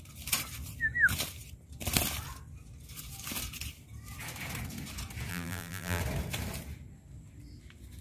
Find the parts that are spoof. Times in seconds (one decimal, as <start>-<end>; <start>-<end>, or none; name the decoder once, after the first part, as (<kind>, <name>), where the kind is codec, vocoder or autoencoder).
5.3-6.0 (vocoder, BigVGAN v2)